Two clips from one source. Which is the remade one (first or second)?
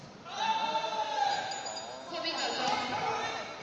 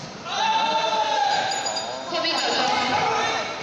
second